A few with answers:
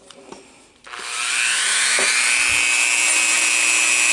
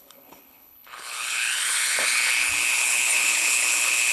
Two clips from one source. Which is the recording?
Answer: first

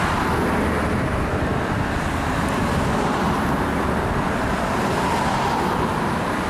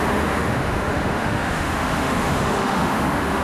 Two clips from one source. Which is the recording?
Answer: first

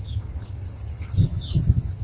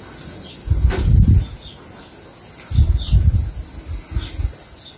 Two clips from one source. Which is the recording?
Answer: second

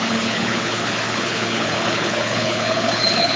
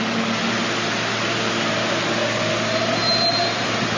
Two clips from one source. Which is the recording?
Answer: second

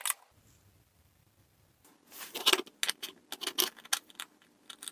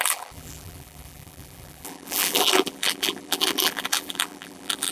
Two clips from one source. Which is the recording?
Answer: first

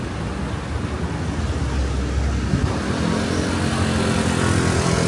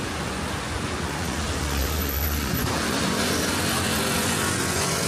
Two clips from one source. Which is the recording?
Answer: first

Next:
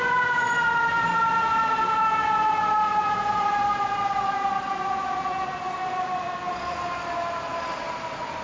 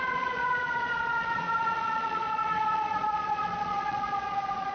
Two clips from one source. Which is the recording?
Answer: first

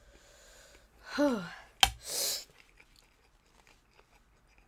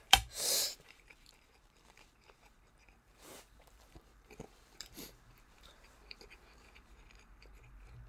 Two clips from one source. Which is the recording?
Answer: first